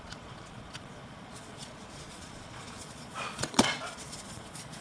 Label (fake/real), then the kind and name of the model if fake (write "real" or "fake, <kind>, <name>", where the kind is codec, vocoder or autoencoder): fake, vocoder, Vocos